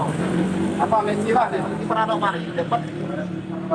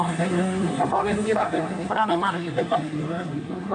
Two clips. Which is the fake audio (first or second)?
second